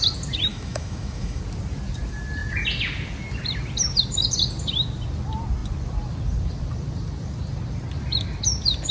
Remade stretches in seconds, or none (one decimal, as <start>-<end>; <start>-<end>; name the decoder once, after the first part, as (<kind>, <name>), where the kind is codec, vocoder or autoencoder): 0.5-1.4 (autoencoder, DAC-VAE)